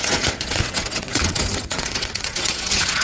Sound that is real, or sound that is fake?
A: fake